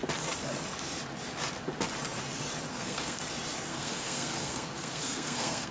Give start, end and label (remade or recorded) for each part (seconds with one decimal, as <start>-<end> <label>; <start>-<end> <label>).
0.0-2.7 recorded; 2.7-3.2 remade; 3.2-3.7 recorded; 3.7-5.7 remade

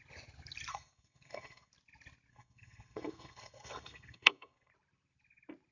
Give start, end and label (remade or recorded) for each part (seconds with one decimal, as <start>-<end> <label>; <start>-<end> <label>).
0.0-0.7 recorded; 0.7-1.7 remade; 1.7-2.3 recorded; 2.3-4.7 remade; 4.7-5.7 recorded

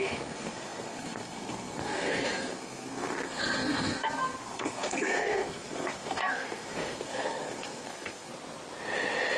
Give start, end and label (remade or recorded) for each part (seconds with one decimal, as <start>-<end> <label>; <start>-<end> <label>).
0.0-8.3 remade; 8.3-9.4 recorded

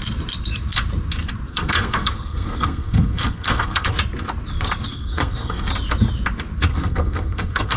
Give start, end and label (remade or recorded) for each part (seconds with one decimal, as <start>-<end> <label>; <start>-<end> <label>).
0.0-1.5 recorded; 1.5-3.9 remade; 3.9-4.9 recorded; 4.9-5.7 remade; 5.7-6.7 recorded; 6.7-7.8 remade

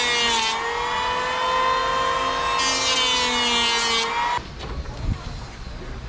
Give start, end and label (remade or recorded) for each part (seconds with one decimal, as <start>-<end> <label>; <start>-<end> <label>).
0.0-6.1 recorded